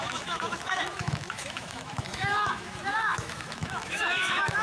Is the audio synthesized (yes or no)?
yes